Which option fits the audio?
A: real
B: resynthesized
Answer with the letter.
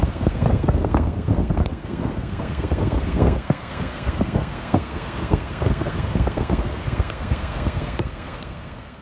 B